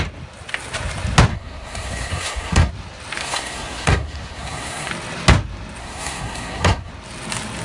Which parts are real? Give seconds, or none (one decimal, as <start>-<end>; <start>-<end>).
0.0-1.3; 2.7-3.2; 4.9-5.8; 6.9-7.6